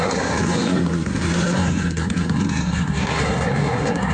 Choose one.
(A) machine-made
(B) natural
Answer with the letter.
A